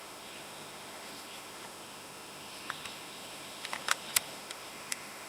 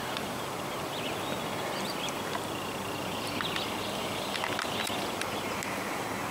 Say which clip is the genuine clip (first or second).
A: second